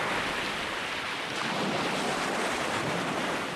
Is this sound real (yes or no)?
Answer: yes